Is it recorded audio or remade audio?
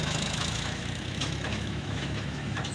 remade